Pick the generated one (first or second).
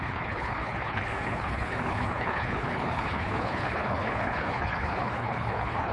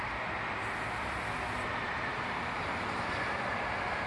first